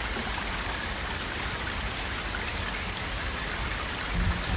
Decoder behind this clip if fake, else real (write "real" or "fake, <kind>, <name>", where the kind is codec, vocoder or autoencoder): real